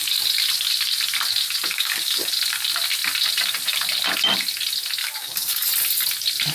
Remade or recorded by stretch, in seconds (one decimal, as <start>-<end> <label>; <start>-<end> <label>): 0.0-1.7 recorded; 1.7-2.3 remade; 2.3-5.0 recorded; 5.0-5.7 remade; 5.7-6.5 recorded